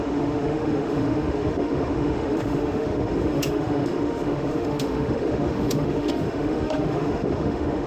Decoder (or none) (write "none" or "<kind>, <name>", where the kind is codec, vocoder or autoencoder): autoencoder, DAC-VAE